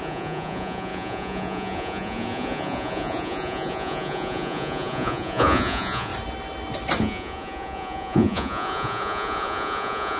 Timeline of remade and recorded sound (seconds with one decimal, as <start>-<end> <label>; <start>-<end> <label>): 0.0-6.1 remade; 6.1-7.0 recorded; 7.0-10.2 remade